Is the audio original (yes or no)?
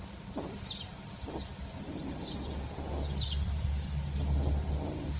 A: yes